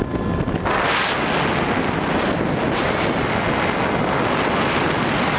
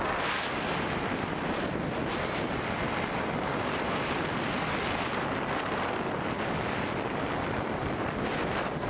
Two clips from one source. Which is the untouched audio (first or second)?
first